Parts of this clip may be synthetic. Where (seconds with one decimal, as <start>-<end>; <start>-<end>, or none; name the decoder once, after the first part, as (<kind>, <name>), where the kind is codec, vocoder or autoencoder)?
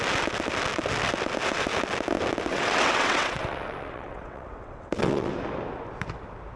2.5-5.3 (vocoder, WaveNeXt)